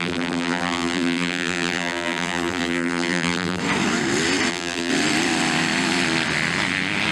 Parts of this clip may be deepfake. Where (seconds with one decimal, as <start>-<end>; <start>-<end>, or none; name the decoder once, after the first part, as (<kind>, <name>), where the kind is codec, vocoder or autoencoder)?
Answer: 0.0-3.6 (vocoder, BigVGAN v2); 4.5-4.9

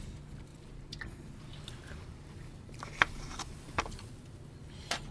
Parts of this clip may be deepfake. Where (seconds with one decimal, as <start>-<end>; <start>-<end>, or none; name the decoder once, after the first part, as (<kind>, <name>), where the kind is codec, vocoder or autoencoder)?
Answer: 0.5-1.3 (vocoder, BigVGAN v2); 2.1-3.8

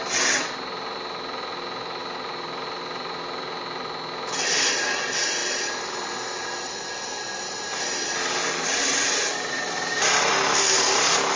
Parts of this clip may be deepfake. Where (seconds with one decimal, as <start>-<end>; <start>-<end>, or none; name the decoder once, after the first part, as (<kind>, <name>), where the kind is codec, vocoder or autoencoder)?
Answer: 2.0-3.6 (vocoder, BigVGAN v2)

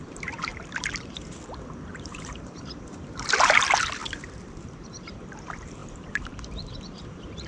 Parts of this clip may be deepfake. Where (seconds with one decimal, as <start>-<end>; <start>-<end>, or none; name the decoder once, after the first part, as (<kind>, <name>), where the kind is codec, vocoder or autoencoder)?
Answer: 0.0-0.5 (vocoder, BigVGAN v2); 1.9-7.5